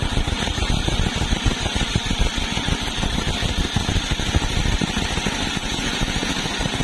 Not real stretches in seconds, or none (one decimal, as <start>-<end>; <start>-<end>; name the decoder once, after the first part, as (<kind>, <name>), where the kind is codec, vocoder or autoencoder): 5.6-6.3 (vocoder, Vocos)